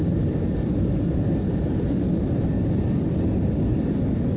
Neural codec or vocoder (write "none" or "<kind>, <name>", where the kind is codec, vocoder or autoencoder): none